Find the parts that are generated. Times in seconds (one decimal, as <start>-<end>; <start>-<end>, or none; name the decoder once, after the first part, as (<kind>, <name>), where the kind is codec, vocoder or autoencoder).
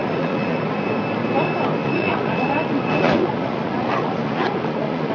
0.0-0.6 (vocoder, Vocos); 1.8-5.1